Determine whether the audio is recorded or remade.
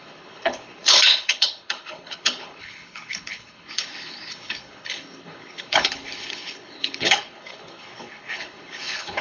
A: remade